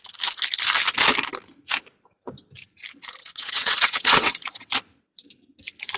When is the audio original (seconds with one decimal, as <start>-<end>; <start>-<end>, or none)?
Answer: 0.0-3.2; 4.7-6.0